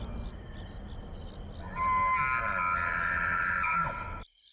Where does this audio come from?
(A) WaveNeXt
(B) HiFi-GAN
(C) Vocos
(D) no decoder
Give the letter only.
D